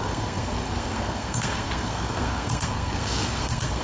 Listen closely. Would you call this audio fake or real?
fake